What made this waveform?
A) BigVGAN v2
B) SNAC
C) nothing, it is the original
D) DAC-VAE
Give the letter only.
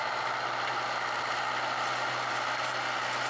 C